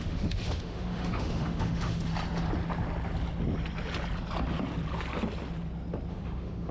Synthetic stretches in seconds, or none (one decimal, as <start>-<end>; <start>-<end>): 0.0-2.1; 6.1-6.7